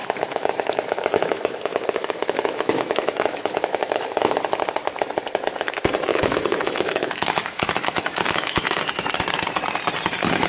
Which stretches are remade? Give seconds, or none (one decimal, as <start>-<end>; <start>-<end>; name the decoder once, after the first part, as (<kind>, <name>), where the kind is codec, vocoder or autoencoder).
0.0-4.3 (autoencoder, DAC-VAE); 6.1-8.8